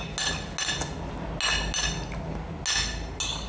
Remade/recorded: recorded